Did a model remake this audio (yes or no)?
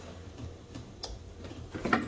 no